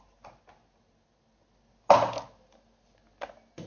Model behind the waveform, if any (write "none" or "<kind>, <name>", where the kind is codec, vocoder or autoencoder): none